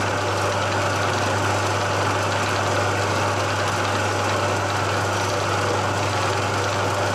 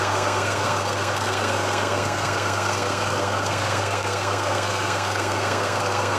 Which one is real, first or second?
first